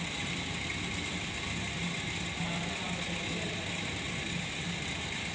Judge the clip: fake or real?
real